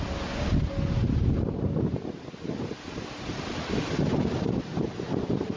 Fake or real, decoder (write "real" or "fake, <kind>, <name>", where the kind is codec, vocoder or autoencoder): real